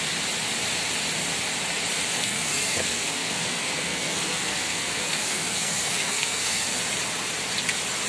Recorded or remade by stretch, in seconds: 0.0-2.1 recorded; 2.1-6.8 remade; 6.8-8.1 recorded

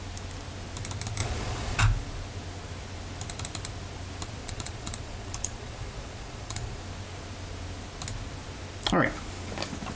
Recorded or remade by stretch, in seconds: 0.0-1.2 recorded; 1.2-1.8 remade; 1.8-4.4 recorded; 4.4-6.8 remade; 6.8-10.0 recorded